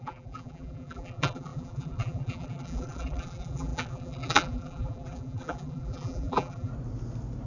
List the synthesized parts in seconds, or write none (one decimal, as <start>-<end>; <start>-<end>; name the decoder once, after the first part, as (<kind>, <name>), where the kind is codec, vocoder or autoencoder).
0.0-6.7 (vocoder, BigVGAN v2)